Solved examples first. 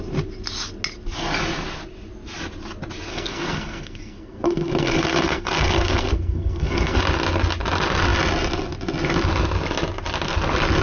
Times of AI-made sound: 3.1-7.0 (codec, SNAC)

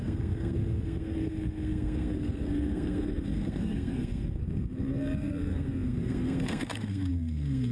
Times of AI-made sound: 0.0-7.7 (codec, SNAC)

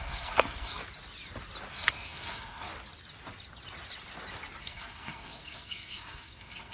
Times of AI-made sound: 0.0-0.8 (codec, SNAC); 1.7-2.7; 4.6-6.7

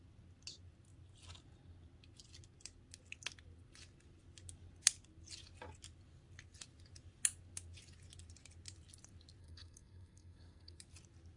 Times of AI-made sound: 9.4-10.8 (codec, SNAC)

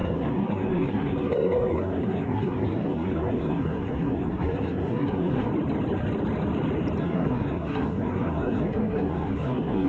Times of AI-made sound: 0.0-5.5 (codec, SNAC); 7.0-9.9

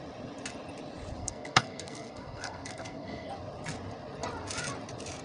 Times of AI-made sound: 1.2-3.3 (codec, SNAC)

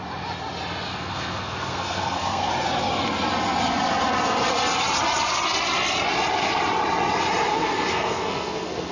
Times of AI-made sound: 0.9-2.5 (codec, SNAC); 7.5-8.9

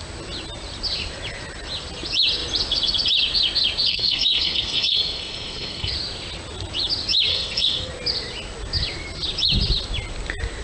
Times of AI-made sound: 3.9-5.9 (codec, SNAC); 7.3-7.9